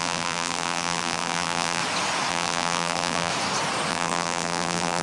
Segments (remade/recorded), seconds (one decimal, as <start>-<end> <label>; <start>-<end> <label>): 0.0-1.8 remade; 1.8-2.3 recorded; 2.3-3.3 remade; 3.3-3.9 recorded; 3.9-5.0 remade